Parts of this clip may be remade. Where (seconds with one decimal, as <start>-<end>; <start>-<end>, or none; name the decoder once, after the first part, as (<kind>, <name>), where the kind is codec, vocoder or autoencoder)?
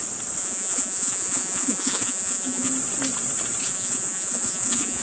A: 0.4-2.7 (vocoder, Vocos); 3.6-5.0